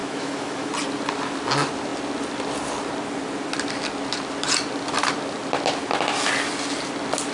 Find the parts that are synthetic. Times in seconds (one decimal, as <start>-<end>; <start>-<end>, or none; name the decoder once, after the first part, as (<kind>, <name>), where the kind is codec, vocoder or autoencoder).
0.0-0.7 (autoencoder, DAC-VAE)